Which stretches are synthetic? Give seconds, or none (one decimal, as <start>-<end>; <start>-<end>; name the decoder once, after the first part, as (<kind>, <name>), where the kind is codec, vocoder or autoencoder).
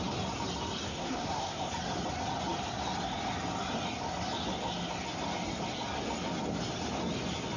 0.9-1.7 (codec, SNAC)